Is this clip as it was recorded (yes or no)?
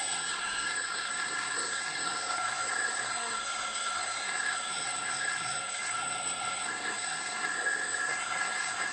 no